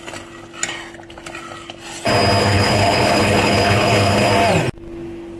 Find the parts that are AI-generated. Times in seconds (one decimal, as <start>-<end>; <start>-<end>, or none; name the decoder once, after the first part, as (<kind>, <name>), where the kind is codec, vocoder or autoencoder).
2.4-4.3 (codec, HILCodec)

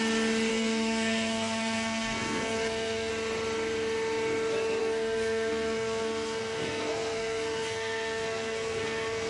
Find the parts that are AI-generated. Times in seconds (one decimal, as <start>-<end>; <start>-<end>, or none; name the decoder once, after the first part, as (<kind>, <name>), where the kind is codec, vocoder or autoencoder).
0.5-3.1 (codec, SNAC); 4.8-9.3

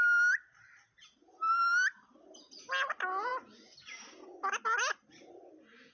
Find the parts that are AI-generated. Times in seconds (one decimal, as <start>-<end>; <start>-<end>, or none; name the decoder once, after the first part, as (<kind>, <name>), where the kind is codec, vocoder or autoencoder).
none

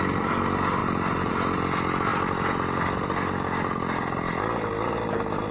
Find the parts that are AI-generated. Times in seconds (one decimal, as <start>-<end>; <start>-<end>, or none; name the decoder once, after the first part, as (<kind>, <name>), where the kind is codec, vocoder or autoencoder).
0.8-1.3 (vocoder, BigVGAN v2)